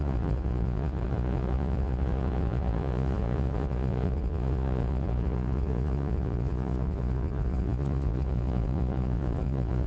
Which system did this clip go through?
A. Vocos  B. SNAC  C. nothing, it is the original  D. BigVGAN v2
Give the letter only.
A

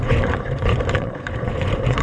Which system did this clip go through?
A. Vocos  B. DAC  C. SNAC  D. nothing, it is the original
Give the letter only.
A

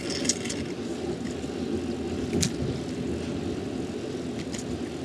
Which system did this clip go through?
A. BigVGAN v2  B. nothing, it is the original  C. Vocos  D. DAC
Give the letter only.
B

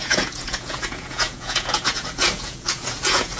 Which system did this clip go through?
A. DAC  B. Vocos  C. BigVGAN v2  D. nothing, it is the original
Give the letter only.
B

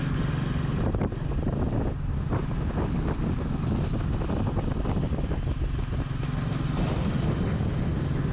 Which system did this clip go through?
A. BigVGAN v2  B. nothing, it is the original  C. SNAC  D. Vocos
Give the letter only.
B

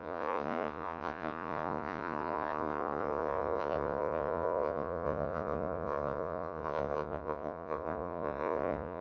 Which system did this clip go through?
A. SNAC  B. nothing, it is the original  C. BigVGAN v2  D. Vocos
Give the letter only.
D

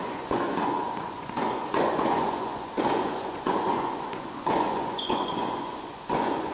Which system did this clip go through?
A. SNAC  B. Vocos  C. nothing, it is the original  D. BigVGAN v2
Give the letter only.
B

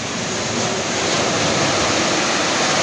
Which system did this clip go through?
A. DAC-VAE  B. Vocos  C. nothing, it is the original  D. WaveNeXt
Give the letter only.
C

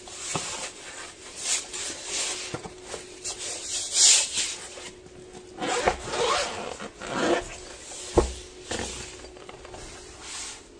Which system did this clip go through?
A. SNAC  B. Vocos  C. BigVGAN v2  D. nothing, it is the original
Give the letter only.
D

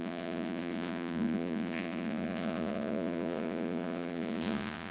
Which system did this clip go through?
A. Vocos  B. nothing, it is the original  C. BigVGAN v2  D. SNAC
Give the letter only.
A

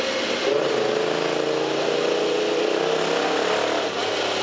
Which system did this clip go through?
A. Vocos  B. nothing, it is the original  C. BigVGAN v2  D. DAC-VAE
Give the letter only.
B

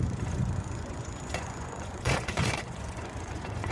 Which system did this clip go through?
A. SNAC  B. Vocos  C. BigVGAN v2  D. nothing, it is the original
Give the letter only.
B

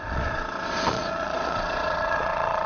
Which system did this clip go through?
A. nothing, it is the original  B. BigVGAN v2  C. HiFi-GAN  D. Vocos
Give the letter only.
D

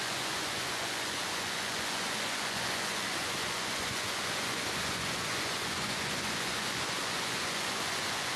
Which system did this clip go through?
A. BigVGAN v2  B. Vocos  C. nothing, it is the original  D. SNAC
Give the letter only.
B